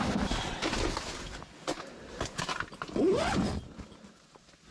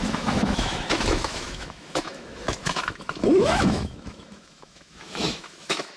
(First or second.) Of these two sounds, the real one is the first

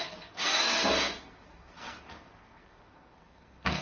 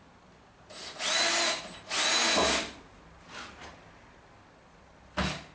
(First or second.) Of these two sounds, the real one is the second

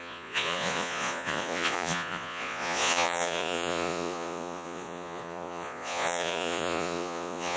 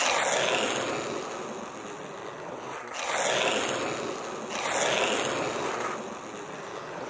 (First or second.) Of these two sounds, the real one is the second